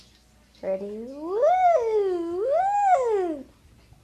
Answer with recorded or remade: recorded